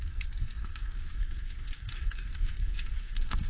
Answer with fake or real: fake